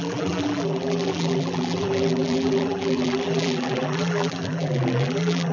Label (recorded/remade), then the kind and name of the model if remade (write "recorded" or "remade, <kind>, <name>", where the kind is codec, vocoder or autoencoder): remade, vocoder, BigVGAN v2